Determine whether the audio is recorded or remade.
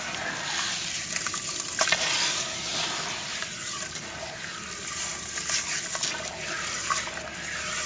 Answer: recorded